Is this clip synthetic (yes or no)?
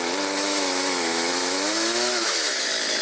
yes